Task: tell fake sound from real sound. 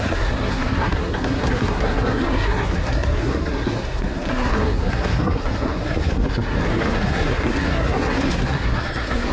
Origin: fake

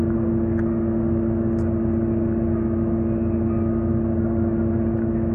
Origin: real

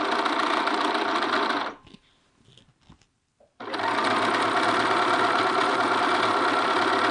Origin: real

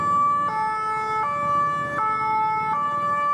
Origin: real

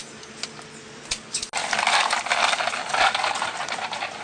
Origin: real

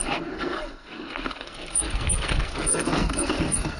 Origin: fake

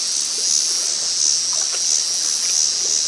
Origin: real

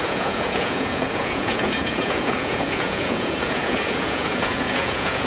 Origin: fake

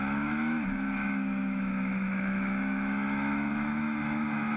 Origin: fake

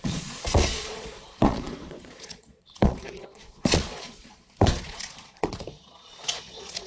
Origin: fake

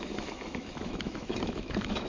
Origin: fake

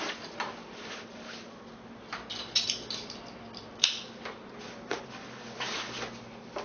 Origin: real